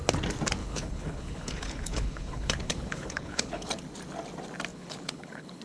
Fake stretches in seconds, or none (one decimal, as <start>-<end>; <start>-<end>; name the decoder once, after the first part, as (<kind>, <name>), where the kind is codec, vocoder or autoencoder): 0.6-3.7 (codec, HILCodec); 4.7-5.6